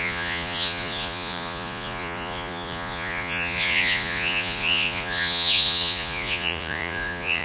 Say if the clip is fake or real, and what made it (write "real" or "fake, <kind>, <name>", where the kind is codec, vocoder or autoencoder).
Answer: fake, vocoder, Vocos